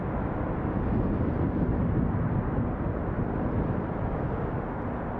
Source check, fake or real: real